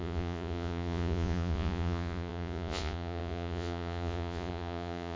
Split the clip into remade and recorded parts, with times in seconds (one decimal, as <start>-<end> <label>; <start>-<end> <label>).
0.0-5.2 remade

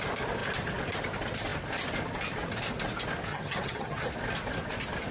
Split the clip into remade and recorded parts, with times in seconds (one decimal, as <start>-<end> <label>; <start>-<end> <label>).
0.0-3.3 recorded; 3.3-4.1 remade; 4.1-5.1 recorded

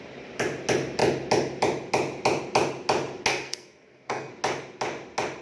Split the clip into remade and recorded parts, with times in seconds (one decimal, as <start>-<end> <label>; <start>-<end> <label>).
0.0-3.3 recorded; 3.3-4.3 remade; 4.3-5.4 recorded

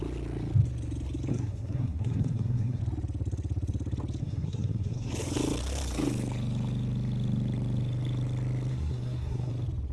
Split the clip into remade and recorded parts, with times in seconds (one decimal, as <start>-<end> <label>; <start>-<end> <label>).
0.0-1.3 recorded; 1.3-2.8 remade; 2.8-4.2 recorded; 4.2-5.1 remade; 5.1-8.7 recorded; 8.7-9.5 remade; 9.5-9.9 recorded

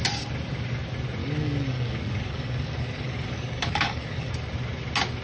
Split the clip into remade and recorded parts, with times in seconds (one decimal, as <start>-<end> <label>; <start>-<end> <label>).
0.0-1.2 recorded; 1.2-4.3 remade; 4.3-5.2 recorded